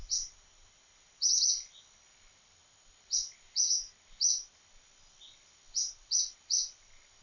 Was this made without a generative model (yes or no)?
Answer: yes